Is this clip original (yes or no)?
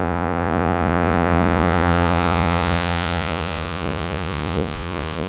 no